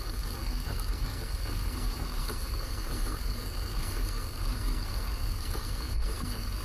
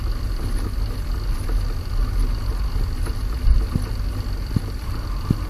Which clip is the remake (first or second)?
first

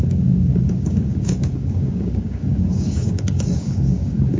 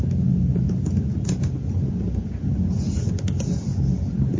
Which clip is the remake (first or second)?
first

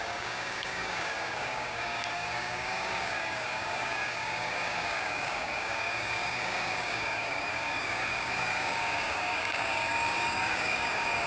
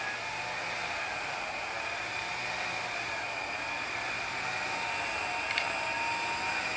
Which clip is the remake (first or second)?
first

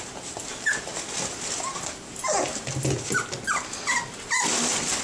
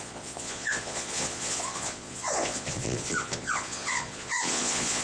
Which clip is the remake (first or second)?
second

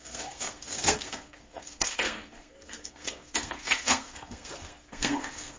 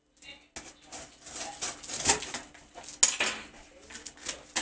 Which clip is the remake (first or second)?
first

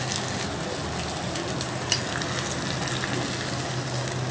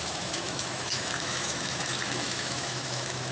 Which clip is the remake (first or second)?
second